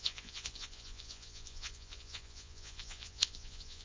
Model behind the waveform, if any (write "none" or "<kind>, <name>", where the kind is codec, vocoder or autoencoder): vocoder, Vocos